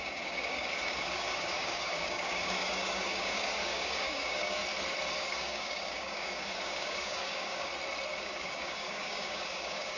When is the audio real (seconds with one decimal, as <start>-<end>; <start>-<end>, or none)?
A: 4.6-5.2; 7.7-8.2